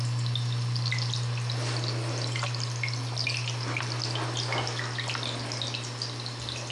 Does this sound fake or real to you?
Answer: real